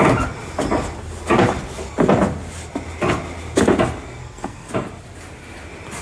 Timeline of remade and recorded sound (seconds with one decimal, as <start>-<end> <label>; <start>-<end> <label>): 0.0-4.2 recorded; 4.2-4.7 remade; 4.7-6.0 recorded